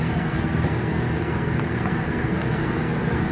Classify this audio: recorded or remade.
remade